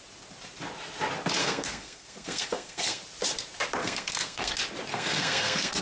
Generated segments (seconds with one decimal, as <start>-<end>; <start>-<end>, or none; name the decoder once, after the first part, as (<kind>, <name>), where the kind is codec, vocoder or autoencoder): 1.4-3.0 (codec, SNAC); 3.8-4.5; 4.9-5.8